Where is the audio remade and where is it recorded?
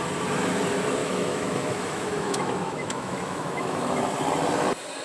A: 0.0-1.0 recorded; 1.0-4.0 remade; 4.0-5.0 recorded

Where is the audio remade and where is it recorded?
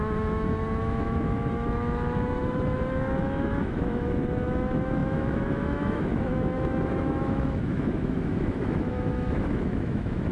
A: 0.0-10.3 remade